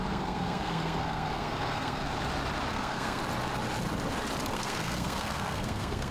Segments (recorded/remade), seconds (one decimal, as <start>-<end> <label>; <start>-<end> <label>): 0.0-2.0 remade; 2.0-2.7 recorded; 2.7-3.2 remade; 3.2-4.5 recorded; 4.5-6.1 remade